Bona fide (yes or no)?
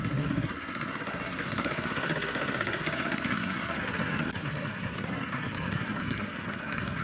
no